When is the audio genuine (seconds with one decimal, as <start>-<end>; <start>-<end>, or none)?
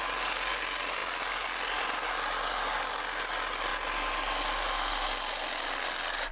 0.0-6.3